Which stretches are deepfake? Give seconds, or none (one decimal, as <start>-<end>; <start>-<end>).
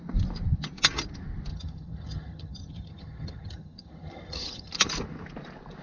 1.5-4.7